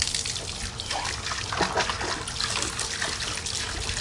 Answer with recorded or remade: recorded